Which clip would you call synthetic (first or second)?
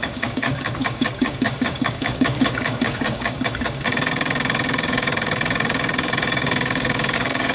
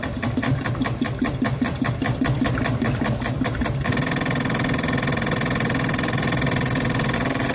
first